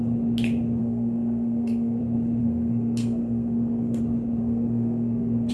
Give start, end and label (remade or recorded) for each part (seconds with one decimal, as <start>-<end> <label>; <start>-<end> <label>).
0.0-0.8 recorded; 0.8-2.0 remade; 2.0-2.4 recorded; 2.4-4.0 remade; 4.0-4.4 recorded; 4.4-5.5 remade